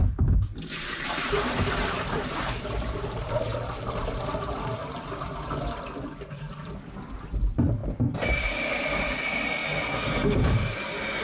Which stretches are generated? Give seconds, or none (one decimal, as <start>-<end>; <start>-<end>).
0.0-9.6; 10.5-11.2